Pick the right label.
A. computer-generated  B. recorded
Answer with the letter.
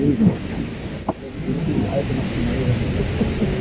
B